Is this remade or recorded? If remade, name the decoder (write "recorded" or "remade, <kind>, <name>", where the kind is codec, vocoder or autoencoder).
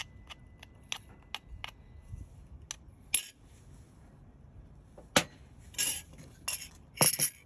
recorded